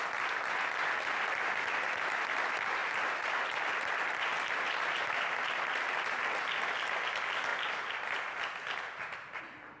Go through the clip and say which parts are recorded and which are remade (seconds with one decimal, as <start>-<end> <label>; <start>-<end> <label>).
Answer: 0.0-2.8 recorded; 2.8-4.6 remade; 4.6-9.8 recorded